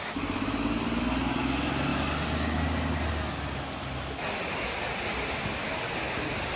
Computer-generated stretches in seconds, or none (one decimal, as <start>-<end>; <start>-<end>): none

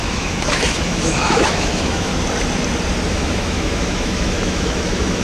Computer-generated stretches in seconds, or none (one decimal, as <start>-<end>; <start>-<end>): 0.0-2.1; 3.1-5.2

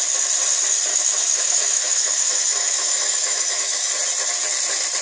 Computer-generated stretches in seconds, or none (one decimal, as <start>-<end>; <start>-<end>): 0.9-3.9